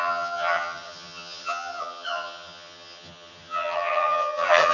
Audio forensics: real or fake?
fake